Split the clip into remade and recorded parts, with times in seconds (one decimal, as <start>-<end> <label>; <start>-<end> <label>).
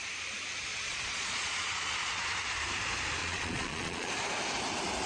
0.0-0.7 recorded; 0.7-2.3 remade; 2.3-3.2 recorded; 3.2-4.1 remade; 4.1-5.1 recorded